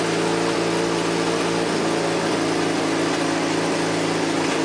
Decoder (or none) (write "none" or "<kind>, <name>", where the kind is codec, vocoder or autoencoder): none